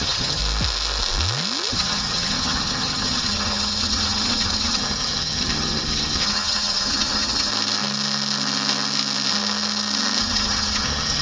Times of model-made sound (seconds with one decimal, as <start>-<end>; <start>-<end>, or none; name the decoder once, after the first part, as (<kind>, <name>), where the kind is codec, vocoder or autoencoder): 0.0-0.4 (vocoder, HiFi-GAN); 1.7-7.5; 10.2-11.2

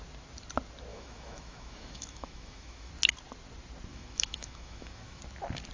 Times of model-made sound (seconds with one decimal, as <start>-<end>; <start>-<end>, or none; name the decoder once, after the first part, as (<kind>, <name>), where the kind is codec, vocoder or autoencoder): 0.9-2.9 (autoencoder, DAC-VAE); 3.9-5.2

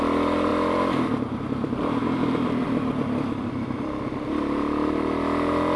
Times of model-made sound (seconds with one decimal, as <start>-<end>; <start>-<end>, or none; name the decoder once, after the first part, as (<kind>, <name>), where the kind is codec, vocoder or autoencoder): 0.5-4.0 (vocoder, BigVGAN v2)

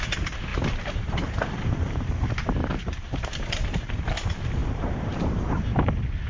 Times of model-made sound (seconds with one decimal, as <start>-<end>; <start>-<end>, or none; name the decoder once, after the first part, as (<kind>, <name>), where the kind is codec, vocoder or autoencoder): 0.5-2.1 (vocoder, BigVGAN v2); 2.8-3.9; 4.6-6.3

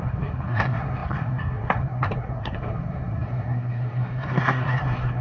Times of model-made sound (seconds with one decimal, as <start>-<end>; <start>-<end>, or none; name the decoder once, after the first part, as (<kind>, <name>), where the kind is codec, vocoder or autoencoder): 0.0-5.2 (codec, SNAC)